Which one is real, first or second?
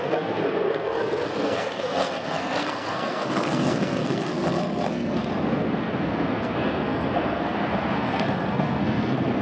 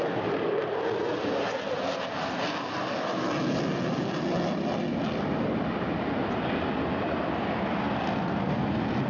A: second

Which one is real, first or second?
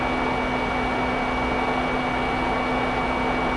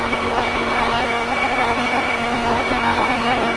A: first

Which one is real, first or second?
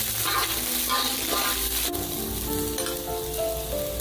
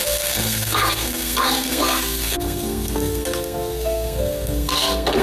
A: first